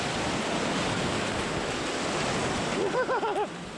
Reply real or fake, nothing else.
real